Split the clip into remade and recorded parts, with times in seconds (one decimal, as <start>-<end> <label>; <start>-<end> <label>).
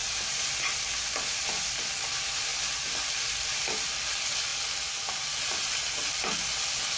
0.0-7.0 recorded